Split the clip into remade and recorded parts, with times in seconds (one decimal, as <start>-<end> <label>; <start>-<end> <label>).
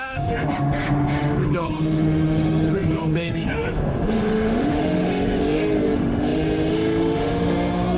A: 0.0-8.0 remade